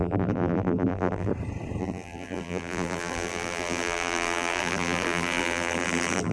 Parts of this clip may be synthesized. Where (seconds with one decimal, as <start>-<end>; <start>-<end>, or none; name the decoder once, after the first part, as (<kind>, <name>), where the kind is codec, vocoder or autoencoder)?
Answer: 0.0-1.3 (vocoder, BigVGAN v2); 1.8-6.3

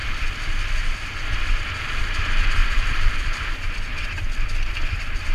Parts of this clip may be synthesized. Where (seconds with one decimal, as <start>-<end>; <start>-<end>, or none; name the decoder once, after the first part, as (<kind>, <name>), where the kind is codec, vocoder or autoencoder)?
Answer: 2.6-3.7 (vocoder, BigVGAN v2)

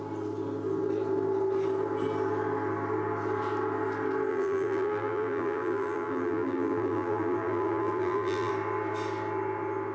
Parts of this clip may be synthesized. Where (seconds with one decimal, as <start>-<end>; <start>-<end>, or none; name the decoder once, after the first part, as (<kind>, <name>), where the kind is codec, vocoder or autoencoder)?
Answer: 4.3-8.5 (vocoder, BigVGAN v2)

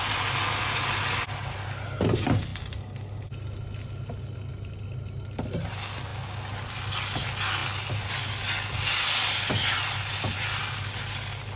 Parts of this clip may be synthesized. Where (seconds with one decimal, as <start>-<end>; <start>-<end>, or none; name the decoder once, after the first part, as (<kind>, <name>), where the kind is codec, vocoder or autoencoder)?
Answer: none

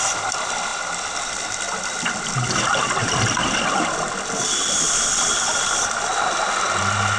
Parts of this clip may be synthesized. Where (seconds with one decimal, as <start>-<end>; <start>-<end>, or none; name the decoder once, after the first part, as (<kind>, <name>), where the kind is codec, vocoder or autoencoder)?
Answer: none

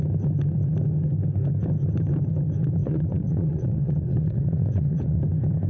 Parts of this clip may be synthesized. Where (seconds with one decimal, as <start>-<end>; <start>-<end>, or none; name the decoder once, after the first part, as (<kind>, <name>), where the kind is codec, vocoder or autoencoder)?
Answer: 2.8-5.2 (vocoder, WaveNeXt)

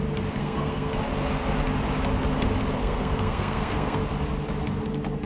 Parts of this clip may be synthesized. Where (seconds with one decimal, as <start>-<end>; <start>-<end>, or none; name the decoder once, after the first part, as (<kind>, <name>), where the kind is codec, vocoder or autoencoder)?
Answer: 0.4-1.0 (codec, SNAC); 2.8-4.0